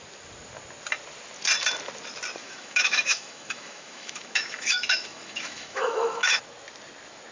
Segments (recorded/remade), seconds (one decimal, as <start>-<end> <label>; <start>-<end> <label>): 0.0-2.4 recorded; 2.4-6.4 remade; 6.4-7.3 recorded